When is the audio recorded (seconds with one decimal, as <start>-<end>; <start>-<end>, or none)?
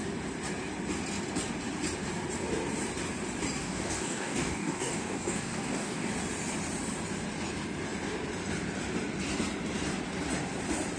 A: 0.0-3.6; 6.1-11.0